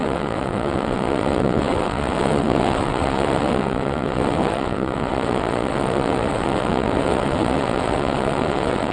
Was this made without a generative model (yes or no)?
no